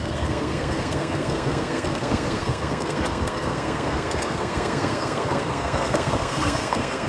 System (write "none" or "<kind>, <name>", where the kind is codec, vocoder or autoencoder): codec, SNAC